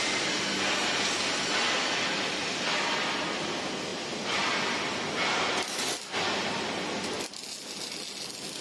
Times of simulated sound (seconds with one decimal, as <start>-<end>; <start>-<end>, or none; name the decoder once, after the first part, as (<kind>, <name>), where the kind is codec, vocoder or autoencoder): none